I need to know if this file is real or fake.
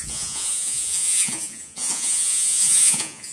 fake